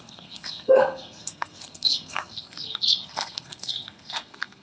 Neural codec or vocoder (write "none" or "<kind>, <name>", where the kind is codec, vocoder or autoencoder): codec, SNAC